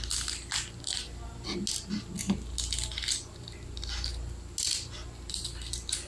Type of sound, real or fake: real